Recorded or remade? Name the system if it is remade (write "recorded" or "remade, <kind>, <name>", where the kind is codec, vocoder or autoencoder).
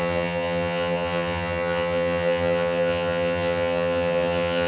remade, vocoder, HiFi-GAN